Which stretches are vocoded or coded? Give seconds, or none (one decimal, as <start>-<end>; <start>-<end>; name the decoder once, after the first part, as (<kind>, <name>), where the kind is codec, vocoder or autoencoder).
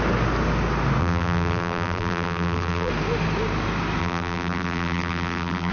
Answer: 1.0-2.9 (vocoder, BigVGAN v2); 4.0-5.7